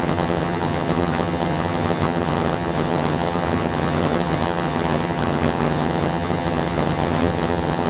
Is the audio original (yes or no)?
no